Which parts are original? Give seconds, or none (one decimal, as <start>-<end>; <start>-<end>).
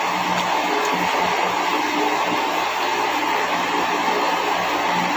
0.0-5.2